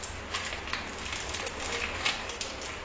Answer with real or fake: real